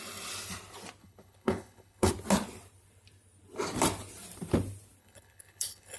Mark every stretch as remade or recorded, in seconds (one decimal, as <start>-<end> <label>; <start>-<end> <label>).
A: 0.0-1.0 recorded; 1.0-2.1 remade; 2.1-5.0 recorded; 5.0-6.0 remade